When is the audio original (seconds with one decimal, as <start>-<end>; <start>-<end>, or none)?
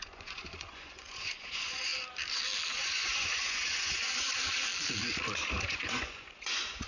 1.9-2.7; 4.7-5.6